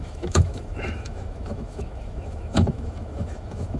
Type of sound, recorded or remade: remade